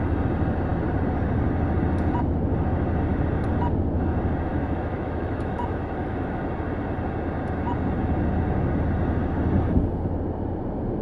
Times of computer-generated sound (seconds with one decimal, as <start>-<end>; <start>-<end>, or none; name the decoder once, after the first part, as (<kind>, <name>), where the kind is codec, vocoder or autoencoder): 4.5-6.4 (autoencoder, DAC-VAE)